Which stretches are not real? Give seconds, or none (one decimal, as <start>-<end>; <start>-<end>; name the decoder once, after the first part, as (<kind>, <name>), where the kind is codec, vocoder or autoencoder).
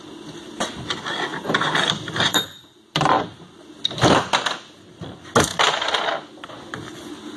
1.3-3.0 (vocoder, BigVGAN v2)